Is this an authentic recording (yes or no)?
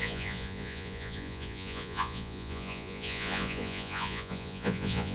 no